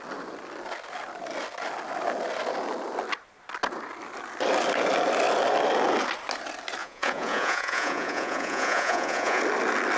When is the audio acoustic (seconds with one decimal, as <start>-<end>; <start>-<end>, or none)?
0.0-6.8; 9.4-10.0